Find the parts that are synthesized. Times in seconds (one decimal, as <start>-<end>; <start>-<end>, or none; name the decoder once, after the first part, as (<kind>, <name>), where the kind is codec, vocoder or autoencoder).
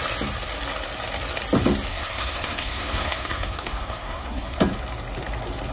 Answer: 1.9-4.6 (codec, SNAC)